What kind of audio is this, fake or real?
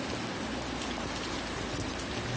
real